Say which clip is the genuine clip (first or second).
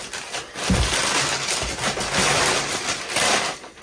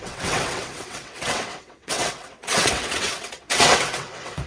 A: first